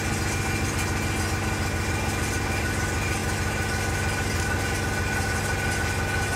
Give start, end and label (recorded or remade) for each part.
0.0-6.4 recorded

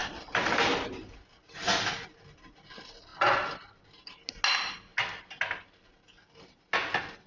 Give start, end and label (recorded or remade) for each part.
0.0-0.5 remade; 0.5-4.9 recorded; 4.9-5.4 remade; 5.4-7.3 recorded

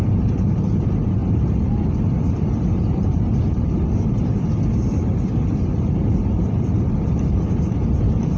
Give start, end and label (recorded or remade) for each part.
0.0-8.4 remade

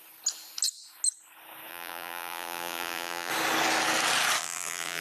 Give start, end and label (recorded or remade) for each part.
0.0-1.7 recorded; 1.7-3.3 remade; 3.3-4.4 recorded; 4.4-5.0 remade